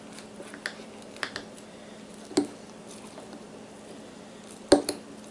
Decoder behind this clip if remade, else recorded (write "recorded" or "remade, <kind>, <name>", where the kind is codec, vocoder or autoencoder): recorded